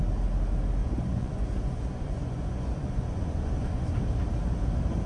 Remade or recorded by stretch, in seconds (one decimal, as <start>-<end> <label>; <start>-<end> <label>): 0.0-0.8 recorded; 0.8-3.9 remade; 3.9-5.1 recorded